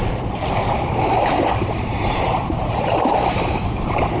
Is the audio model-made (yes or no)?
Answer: yes